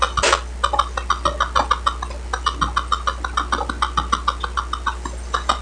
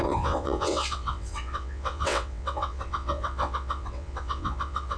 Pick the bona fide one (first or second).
first